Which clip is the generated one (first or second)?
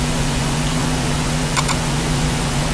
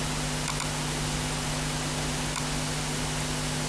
first